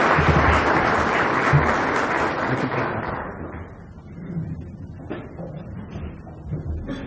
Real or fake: real